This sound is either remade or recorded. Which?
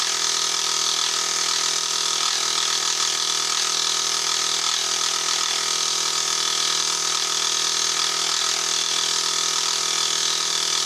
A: recorded